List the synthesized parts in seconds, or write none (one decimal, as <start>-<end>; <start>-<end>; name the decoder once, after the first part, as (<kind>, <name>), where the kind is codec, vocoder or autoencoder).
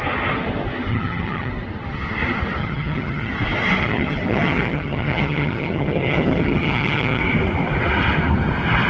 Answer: 0.9-1.5 (vocoder, HiFi-GAN); 2.6-3.3; 3.8-7.2